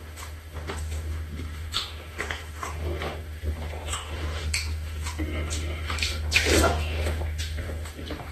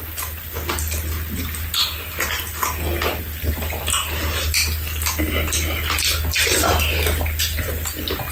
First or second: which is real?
second